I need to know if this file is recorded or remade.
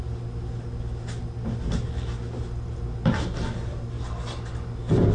recorded